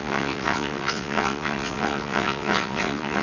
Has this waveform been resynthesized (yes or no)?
yes